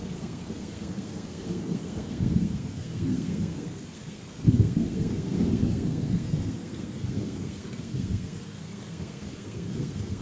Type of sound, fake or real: fake